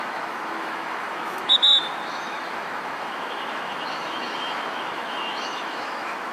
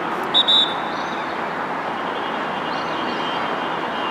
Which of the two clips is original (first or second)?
second